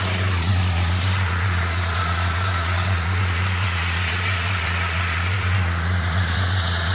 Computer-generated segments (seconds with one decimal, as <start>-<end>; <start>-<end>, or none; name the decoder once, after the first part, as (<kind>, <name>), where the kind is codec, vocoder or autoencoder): 0.0-6.9 (vocoder, Vocos)